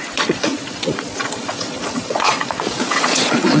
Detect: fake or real fake